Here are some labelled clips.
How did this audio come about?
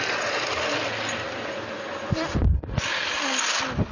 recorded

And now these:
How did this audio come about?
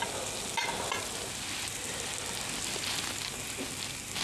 recorded